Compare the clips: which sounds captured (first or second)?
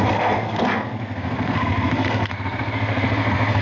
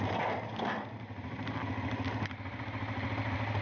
second